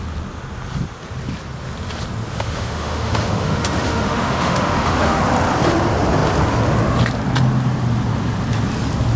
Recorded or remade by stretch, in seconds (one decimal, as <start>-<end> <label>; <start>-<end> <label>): 0.0-2.3 recorded; 2.3-5.2 remade; 5.2-9.2 recorded